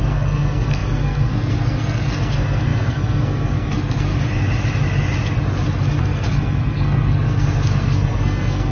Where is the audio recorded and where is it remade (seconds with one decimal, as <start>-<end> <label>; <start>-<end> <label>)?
0.0-4.1 remade; 4.1-6.0 recorded; 6.0-8.7 remade